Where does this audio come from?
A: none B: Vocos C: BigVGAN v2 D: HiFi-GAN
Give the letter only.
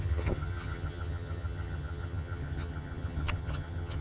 D